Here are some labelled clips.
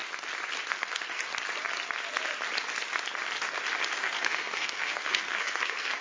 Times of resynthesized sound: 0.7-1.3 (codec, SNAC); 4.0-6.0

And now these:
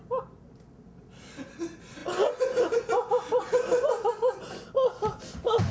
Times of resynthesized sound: none